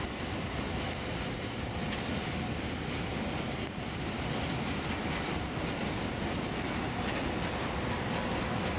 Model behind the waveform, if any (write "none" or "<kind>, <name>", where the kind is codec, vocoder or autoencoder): none